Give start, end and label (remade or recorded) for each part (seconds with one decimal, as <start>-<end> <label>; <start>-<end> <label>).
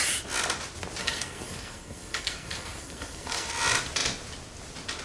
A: 0.0-1.0 recorded; 1.0-3.5 remade; 3.5-5.0 recorded